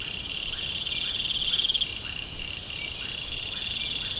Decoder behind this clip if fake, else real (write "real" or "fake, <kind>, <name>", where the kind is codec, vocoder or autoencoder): real